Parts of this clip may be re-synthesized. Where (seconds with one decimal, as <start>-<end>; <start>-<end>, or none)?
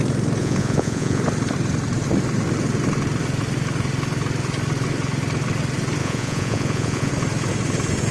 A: 0.4-1.2; 6.0-7.1